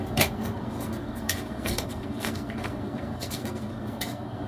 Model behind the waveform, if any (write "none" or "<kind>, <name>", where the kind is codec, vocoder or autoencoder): codec, SNAC